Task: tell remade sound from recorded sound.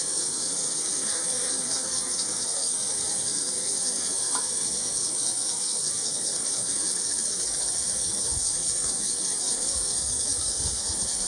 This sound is remade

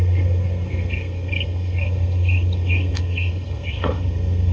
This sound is remade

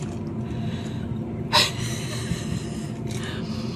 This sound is recorded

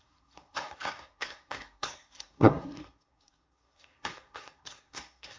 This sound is remade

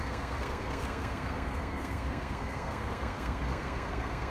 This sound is remade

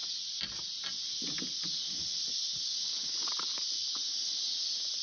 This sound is recorded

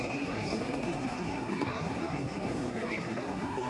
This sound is remade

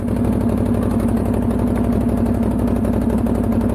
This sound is recorded